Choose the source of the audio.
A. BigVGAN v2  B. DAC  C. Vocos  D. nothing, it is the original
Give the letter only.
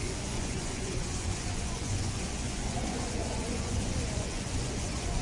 C